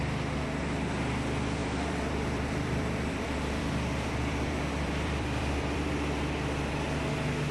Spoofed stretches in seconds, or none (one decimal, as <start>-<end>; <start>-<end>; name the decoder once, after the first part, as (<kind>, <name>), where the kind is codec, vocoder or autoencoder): 1.6-5.9 (vocoder, BigVGAN v2)